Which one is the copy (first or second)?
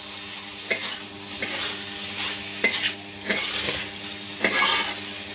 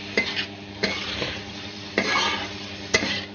second